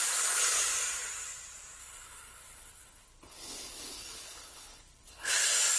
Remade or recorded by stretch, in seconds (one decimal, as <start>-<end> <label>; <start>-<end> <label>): 0.0-1.8 recorded; 1.8-5.3 remade; 5.3-5.8 recorded